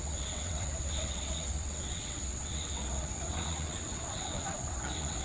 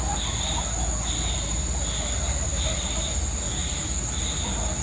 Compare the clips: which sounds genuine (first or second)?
second